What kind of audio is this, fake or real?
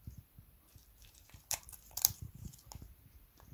fake